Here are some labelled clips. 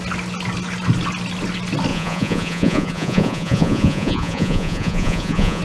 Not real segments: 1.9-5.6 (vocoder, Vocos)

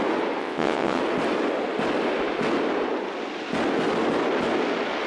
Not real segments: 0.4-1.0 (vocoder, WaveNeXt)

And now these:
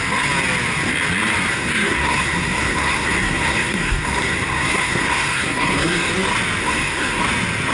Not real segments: 1.5-6.1 (codec, SNAC); 6.6-7.2

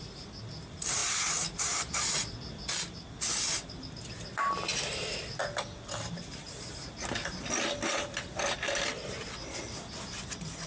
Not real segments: none

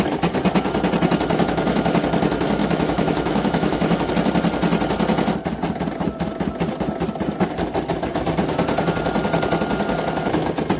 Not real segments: 2.6-4.1 (autoencoder, DAC-VAE)

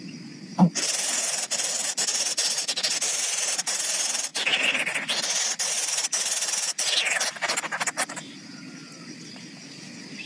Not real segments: none